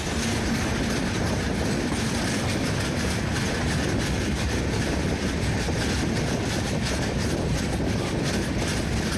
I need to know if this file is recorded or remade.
recorded